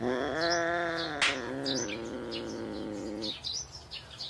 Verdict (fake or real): real